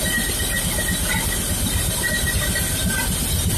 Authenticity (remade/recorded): recorded